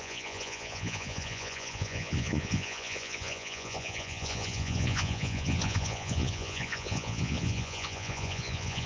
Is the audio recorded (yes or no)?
no